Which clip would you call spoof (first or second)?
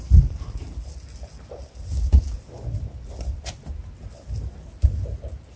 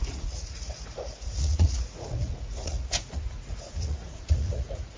second